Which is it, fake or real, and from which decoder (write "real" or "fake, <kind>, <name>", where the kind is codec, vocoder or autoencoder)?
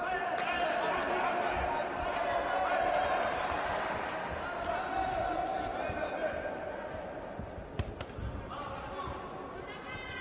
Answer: real